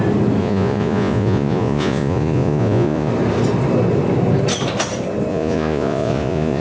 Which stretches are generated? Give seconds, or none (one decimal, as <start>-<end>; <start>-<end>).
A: 0.4-3.1; 5.3-6.6